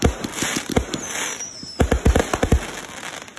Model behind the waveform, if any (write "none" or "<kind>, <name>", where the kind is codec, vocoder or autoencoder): none